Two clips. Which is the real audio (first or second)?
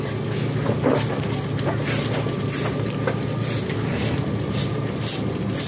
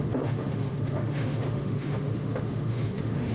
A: first